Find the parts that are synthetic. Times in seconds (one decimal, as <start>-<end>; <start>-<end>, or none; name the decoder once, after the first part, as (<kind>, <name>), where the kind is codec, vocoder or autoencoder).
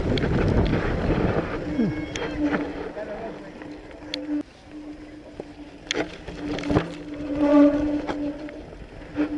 none